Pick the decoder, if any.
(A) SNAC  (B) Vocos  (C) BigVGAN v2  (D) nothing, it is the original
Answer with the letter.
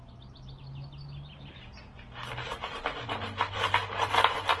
D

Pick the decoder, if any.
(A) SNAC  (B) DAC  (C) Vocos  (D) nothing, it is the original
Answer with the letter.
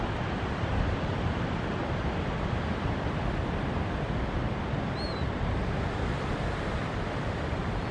D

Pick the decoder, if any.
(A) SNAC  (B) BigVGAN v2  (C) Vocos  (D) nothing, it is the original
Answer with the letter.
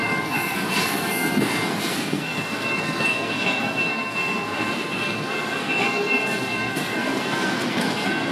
A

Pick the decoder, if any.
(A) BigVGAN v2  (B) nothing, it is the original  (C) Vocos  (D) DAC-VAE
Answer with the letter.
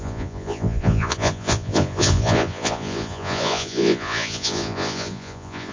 C